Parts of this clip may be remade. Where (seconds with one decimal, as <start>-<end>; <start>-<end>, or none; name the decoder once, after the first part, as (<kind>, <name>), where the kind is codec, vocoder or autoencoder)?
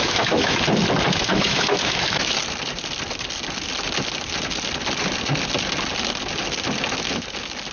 0.0-0.6 (autoencoder, DAC-VAE); 1.3-2.4